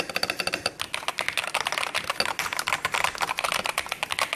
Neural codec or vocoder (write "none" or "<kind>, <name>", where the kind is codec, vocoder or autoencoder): none